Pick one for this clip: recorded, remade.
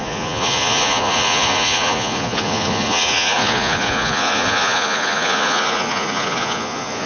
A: remade